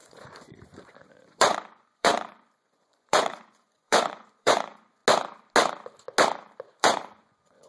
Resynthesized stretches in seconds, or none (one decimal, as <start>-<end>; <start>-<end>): 0.0-5.0; 6.8-7.7